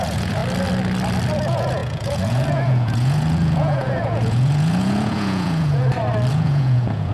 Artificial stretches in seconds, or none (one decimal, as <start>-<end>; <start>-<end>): 0.0-0.4; 1.4-5.8; 6.3-7.1